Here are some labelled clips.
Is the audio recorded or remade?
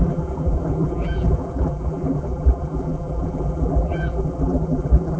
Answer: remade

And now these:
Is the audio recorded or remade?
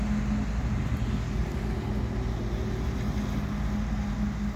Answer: recorded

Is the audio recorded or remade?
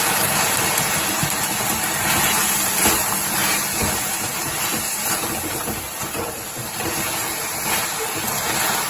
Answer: remade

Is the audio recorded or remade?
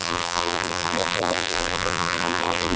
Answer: remade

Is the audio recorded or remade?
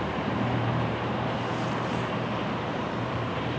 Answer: remade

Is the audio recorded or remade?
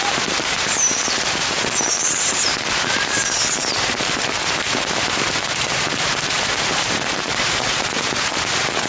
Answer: remade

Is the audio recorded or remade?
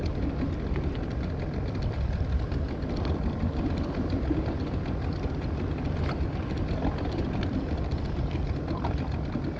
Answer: remade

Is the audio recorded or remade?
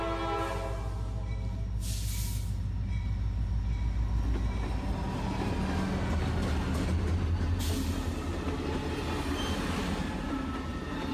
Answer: recorded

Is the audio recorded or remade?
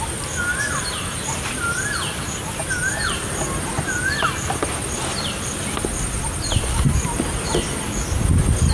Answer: recorded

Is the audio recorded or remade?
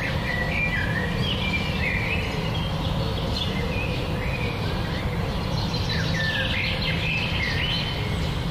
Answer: recorded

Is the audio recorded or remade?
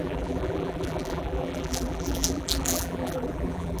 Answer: remade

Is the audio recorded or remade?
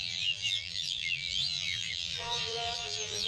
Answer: remade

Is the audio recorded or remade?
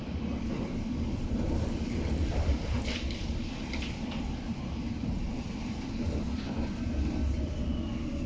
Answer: remade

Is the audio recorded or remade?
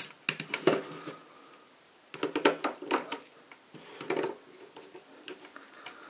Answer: recorded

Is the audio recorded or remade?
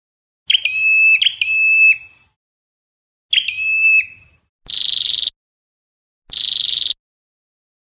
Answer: recorded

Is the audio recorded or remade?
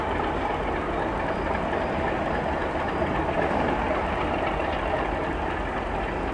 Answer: recorded